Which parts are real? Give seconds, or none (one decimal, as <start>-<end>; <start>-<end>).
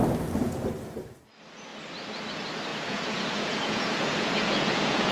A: 0.0-2.7